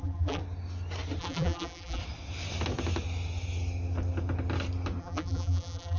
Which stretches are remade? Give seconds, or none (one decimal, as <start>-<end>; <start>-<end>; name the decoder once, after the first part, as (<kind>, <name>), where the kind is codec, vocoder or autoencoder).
0.0-0.4 (vocoder, BigVGAN v2); 1.2-2.0; 5.0-6.0

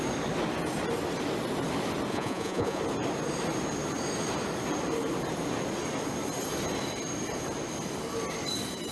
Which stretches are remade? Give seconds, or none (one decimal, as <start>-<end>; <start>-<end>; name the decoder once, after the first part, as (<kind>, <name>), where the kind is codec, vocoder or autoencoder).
2.1-2.8 (vocoder, Vocos)

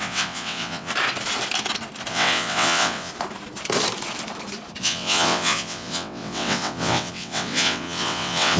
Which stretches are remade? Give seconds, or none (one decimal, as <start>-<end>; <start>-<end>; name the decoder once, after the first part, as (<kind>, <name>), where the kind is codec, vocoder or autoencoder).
0.0-0.9 (vocoder, WaveNeXt); 2.1-3.1; 4.8-8.6

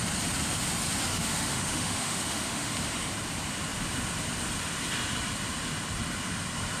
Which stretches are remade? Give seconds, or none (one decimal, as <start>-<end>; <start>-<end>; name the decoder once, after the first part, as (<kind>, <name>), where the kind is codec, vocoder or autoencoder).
1.1-3.1 (autoencoder, DAC-VAE)

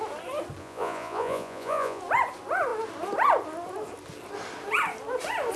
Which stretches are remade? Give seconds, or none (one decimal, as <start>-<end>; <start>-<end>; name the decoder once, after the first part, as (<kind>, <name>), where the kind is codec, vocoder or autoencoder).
0.6-2.0 (vocoder, Vocos)

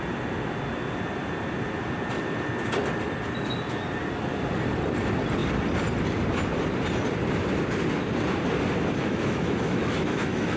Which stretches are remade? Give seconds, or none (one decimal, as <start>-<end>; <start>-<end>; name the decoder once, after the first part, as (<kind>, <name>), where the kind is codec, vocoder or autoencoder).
9.0-10.6 (autoencoder, DAC-VAE)

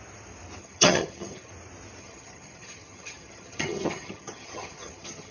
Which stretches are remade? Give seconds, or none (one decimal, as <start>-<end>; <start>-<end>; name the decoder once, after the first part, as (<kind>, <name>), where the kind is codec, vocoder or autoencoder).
0.6-1.5 (vocoder, HiFi-GAN); 2.0-5.3